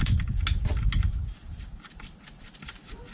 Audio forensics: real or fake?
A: real